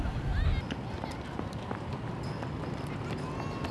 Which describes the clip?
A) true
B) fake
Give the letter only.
A